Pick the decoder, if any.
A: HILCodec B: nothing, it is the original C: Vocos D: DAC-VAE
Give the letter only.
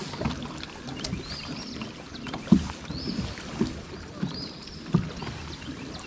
B